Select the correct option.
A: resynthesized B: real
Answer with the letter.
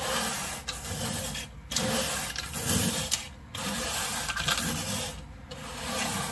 B